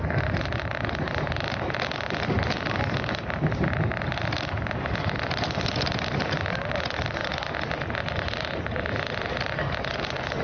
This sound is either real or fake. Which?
real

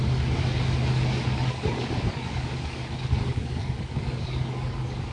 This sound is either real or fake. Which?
fake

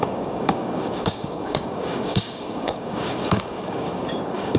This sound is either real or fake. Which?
fake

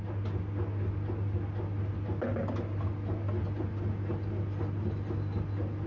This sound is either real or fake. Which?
real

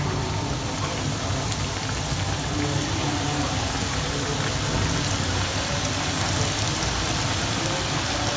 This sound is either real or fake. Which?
real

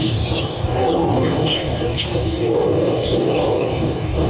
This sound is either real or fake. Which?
fake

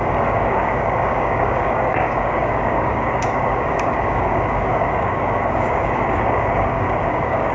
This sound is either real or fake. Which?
fake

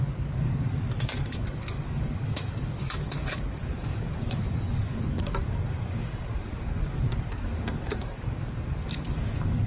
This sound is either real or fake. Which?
fake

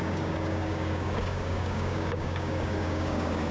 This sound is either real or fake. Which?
fake